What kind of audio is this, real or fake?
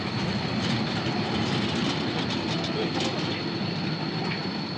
real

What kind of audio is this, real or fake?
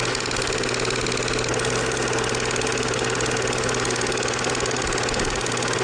real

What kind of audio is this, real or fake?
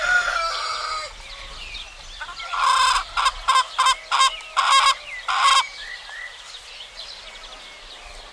real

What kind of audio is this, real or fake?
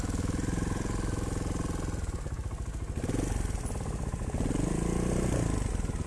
real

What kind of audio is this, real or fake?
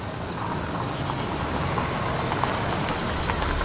real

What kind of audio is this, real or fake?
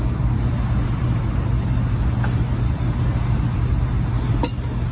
real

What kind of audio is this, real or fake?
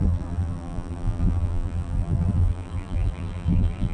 fake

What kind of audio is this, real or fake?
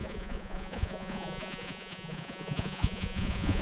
fake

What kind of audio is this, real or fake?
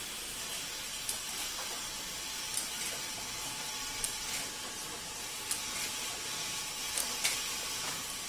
real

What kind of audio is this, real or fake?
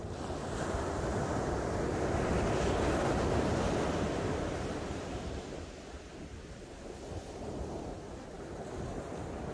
real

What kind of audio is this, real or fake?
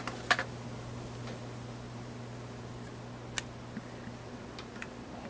real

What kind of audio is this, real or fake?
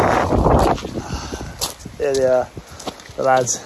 real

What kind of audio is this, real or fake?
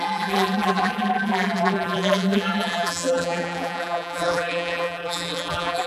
fake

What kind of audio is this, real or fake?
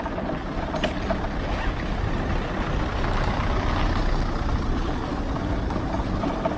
real